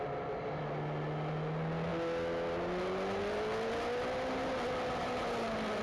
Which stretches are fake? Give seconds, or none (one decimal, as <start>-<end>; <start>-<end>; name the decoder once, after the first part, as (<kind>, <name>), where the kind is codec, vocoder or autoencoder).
none